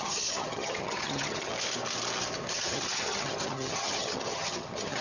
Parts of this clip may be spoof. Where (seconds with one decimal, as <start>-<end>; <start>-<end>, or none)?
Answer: 0.0-1.5; 2.5-5.0